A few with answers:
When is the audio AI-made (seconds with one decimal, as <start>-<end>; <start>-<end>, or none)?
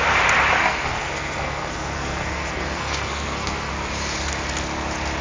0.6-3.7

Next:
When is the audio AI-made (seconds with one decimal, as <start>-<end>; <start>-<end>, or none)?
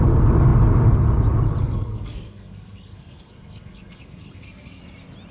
1.6-4.8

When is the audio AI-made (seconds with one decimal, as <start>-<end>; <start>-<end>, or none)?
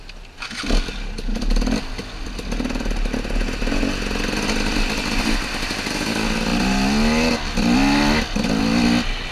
none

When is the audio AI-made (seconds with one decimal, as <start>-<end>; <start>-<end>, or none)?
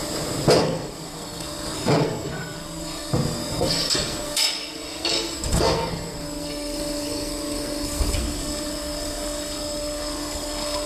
0.6-10.9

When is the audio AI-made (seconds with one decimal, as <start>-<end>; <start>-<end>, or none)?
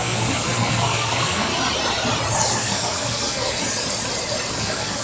0.0-1.5; 2.5-3.6; 4.5-5.0